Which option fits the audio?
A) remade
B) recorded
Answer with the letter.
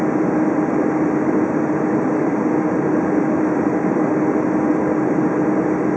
B